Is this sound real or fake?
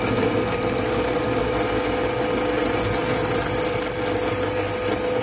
real